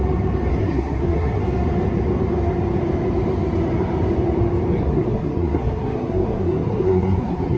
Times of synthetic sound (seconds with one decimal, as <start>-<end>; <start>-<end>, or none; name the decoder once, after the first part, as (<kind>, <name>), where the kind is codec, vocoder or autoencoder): 0.5-1.4 (codec, SNAC); 4.8-7.6